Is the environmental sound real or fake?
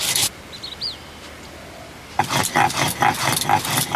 real